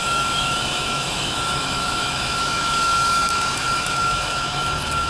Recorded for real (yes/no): no